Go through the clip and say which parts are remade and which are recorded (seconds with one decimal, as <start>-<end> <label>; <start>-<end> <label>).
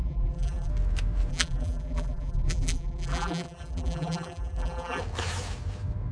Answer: 0.0-0.7 remade; 0.7-1.3 recorded; 1.3-5.0 remade; 5.0-6.1 recorded